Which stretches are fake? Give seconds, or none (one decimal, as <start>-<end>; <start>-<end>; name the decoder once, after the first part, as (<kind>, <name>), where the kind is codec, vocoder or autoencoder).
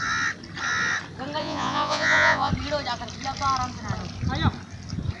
1.4-2.5 (vocoder, Vocos)